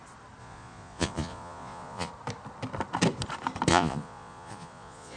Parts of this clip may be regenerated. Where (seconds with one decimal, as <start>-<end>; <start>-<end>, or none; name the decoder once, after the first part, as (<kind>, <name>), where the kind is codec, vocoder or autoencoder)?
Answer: 0.4-2.1 (vocoder, Vocos); 3.7-5.2